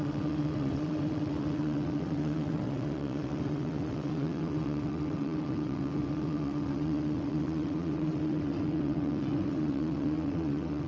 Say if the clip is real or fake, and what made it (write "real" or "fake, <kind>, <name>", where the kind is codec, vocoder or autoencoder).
fake, vocoder, WaveNeXt